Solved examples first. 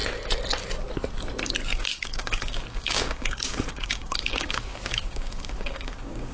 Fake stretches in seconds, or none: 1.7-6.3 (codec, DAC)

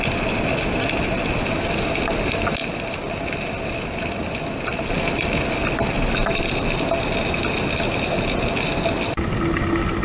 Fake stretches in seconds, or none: none

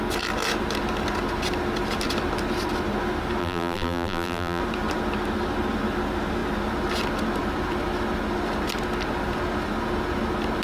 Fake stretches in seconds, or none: 3.4-4.6 (vocoder, BigVGAN v2)